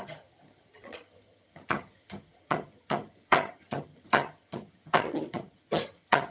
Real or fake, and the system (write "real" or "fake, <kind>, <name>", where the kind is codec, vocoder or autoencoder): fake, vocoder, HiFi-GAN